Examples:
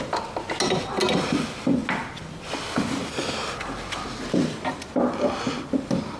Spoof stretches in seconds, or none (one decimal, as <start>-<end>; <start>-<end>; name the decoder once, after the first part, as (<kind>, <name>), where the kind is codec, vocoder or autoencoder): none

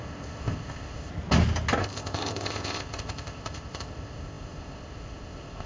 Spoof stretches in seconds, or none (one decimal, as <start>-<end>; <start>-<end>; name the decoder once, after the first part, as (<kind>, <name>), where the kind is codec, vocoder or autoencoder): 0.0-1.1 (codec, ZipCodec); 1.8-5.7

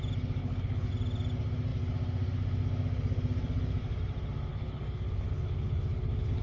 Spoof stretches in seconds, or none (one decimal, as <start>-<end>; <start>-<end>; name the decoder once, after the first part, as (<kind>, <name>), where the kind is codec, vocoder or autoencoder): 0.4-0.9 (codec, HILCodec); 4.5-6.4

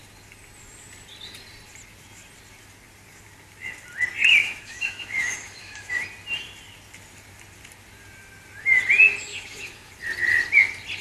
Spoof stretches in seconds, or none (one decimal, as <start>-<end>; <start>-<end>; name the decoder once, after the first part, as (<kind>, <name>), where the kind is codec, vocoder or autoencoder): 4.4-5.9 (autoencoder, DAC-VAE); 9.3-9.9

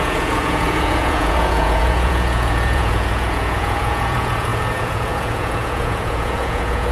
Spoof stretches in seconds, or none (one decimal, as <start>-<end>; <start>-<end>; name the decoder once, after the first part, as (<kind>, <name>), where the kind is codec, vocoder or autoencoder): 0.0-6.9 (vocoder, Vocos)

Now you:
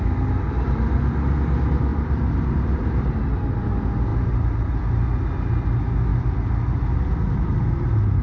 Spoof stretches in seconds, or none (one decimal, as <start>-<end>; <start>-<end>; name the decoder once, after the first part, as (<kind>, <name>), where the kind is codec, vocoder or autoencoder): 1.9-3.1 (vocoder, BigVGAN v2); 4.1-4.8